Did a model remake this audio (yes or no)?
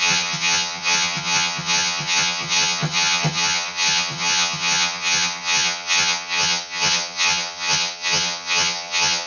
yes